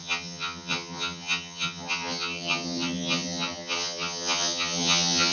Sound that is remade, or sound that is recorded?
remade